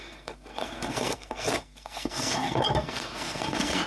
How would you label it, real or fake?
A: fake